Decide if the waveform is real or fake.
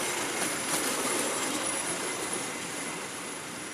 real